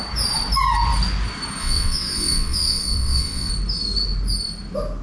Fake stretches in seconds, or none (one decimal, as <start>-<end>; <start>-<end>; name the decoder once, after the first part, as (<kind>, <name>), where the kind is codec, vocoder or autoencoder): 1.6-3.5 (vocoder, WaveNeXt)